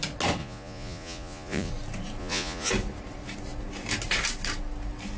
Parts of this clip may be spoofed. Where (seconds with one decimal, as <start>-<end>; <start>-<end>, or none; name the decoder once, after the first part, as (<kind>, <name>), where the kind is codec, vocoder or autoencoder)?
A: 0.4-1.7 (vocoder, Vocos); 2.2-2.7

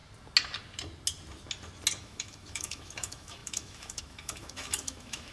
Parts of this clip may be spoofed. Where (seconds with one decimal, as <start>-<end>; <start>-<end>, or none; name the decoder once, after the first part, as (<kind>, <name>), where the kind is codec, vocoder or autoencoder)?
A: 2.0-5.3 (autoencoder, DAC-VAE)

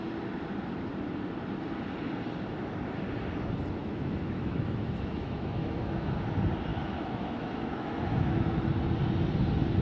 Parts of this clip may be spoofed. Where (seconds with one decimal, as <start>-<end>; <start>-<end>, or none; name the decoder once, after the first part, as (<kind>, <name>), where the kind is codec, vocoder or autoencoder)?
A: 3.8-6.2 (autoencoder, DAC-VAE); 6.7-8.7

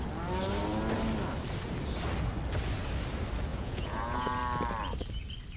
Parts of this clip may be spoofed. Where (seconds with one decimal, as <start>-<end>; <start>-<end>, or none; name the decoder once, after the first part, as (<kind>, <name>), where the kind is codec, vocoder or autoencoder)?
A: 3.5-4.4 (vocoder, Vocos)

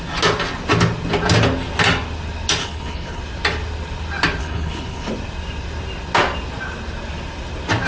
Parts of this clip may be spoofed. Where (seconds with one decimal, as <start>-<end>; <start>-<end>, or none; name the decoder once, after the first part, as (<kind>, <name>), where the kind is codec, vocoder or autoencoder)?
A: 2.6-3.2 (codec, HILCodec); 4.4-5.1

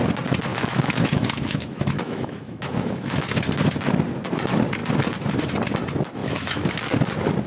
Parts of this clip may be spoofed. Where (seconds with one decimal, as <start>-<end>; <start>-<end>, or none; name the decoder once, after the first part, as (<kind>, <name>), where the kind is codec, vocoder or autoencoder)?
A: 0.5-3.3 (autoencoder, DAC-VAE); 6.2-6.7

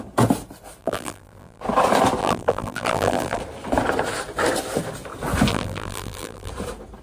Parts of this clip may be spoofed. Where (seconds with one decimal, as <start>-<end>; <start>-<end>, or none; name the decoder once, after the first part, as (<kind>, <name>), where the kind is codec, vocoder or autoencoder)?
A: 0.8-1.6 (vocoder, BigVGAN v2); 2.2-3.4; 5.5-6.5

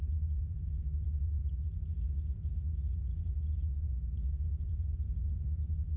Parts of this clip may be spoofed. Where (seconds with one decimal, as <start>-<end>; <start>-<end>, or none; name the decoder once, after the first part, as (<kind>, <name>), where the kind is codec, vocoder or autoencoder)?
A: 0.0-6.0 (vocoder, BigVGAN v2)